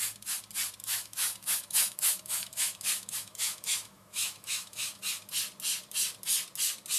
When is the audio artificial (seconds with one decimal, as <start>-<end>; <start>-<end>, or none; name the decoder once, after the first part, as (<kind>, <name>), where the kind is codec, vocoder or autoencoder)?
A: 0.8-5.0 (autoencoder, DAC-VAE)